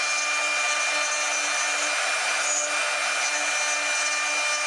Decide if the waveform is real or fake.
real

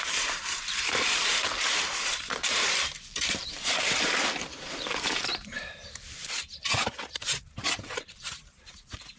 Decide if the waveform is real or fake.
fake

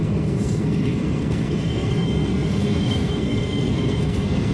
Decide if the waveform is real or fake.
fake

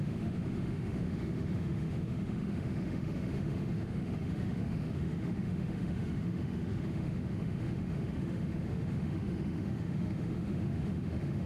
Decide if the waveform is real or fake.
fake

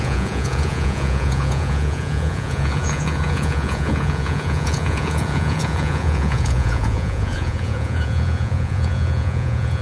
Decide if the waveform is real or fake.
fake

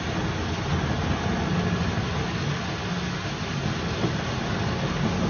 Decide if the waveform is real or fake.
real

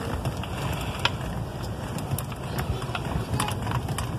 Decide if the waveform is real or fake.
real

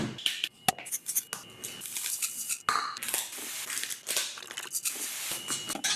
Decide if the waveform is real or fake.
real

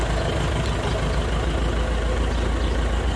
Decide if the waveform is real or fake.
real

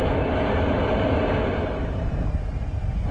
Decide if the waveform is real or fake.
real